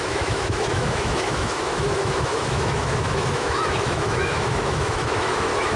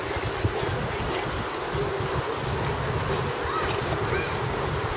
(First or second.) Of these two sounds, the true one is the second